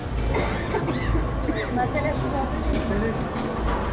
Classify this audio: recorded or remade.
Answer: recorded